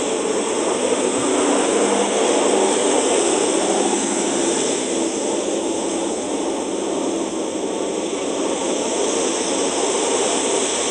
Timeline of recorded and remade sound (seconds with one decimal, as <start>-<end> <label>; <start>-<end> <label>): 0.0-10.9 recorded

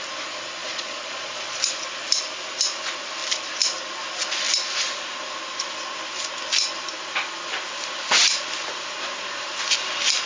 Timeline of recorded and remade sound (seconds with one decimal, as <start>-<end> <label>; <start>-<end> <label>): 0.0-0.6 recorded; 0.6-1.6 remade; 1.6-10.3 recorded

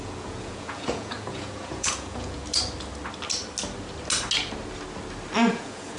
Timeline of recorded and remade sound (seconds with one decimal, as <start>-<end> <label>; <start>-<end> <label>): 0.0-2.4 remade; 2.4-5.5 recorded; 5.5-6.0 remade

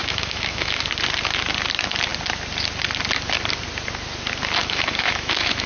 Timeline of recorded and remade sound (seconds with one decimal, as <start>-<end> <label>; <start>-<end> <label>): 0.0-0.9 remade; 0.9-4.6 recorded; 4.6-5.7 remade